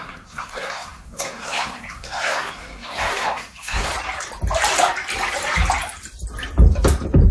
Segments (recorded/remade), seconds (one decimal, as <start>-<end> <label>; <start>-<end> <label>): 0.0-3.9 remade; 3.9-7.3 recorded